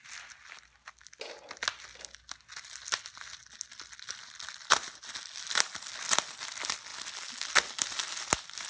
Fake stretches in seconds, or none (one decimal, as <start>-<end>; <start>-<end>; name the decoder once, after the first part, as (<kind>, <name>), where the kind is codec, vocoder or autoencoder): none